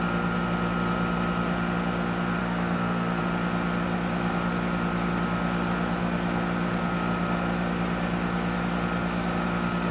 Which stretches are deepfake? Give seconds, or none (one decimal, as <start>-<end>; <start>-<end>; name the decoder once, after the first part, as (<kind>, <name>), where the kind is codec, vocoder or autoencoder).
2.4-3.2 (codec, SNAC)